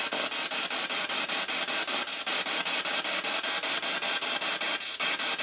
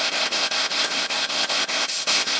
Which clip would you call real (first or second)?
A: first